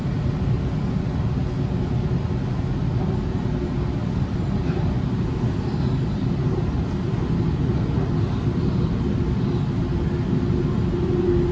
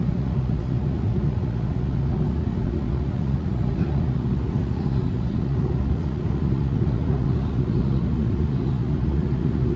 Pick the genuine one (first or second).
first